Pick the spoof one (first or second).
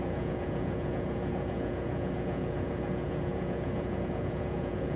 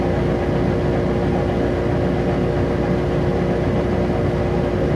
first